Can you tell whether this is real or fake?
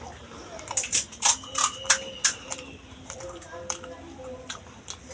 real